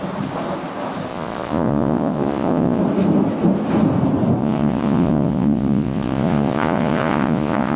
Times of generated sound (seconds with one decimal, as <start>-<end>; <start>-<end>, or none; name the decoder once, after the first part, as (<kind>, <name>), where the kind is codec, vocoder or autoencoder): 1.1-2.8 (vocoder, Vocos); 4.4-7.8